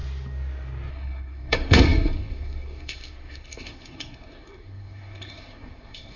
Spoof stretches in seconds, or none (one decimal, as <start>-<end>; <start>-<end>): 0.9-6.2